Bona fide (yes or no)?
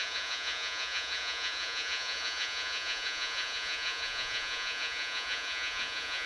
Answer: no